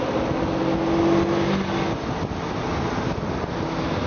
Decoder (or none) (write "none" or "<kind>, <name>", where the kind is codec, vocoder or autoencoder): none